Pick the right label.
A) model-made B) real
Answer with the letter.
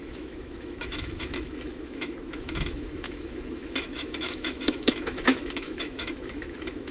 A